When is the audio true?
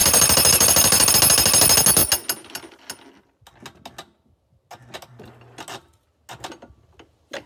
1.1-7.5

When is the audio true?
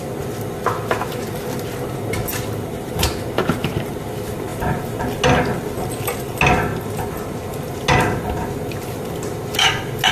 0.0-2.3; 2.9-3.4; 4.0-10.1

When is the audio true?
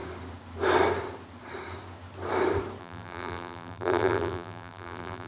0.0-2.8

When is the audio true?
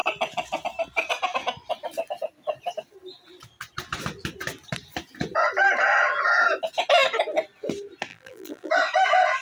0.0-8.1; 8.7-9.4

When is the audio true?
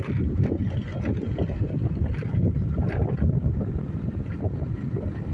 0.0-0.9; 4.1-5.3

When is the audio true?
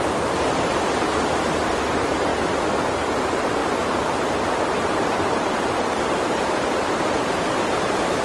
1.1-1.7; 2.3-3.2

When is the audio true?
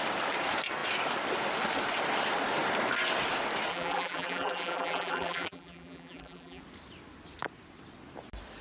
0.0-3.7; 6.6-8.6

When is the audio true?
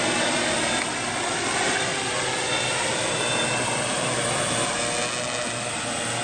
0.0-6.2